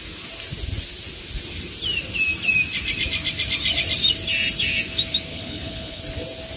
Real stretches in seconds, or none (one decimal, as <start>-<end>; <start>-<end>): 0.0-5.3; 6.0-6.6